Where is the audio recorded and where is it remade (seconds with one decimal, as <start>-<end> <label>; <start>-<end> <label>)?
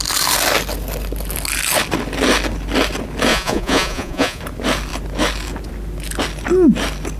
0.0-3.3 recorded; 3.3-4.4 remade; 4.4-7.2 recorded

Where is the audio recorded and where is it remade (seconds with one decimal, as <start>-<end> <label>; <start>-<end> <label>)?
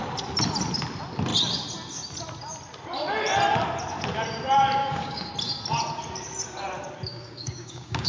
0.0-4.8 recorded; 4.8-5.3 remade; 5.3-7.1 recorded; 7.1-8.1 remade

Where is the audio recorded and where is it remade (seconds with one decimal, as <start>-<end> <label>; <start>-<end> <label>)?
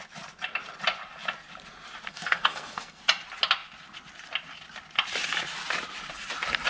0.0-2.1 recorded; 2.1-3.0 remade; 3.0-6.7 recorded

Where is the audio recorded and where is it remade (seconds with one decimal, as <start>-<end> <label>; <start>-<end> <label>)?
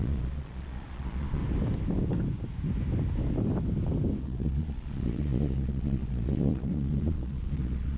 0.0-1.4 remade; 1.4-4.2 recorded; 4.2-8.0 remade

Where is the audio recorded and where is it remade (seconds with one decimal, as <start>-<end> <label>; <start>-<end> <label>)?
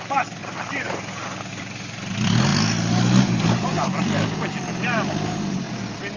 0.0-6.2 recorded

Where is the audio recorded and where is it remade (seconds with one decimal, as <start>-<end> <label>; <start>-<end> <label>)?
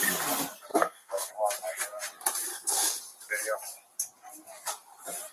0.0-0.7 recorded; 0.7-1.3 remade; 1.3-2.5 recorded; 2.5-3.0 remade; 3.0-5.3 recorded